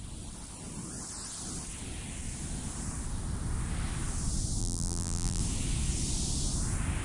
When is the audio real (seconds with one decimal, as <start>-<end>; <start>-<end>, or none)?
0.0-4.6; 5.4-7.0